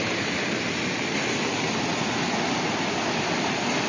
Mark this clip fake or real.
real